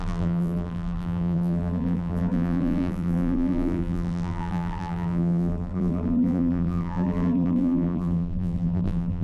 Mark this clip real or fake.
fake